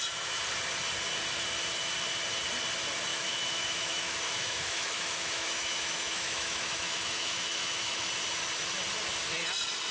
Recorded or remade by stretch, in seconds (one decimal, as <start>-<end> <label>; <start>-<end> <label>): 0.0-3.1 recorded; 3.1-8.1 remade; 8.1-9.9 recorded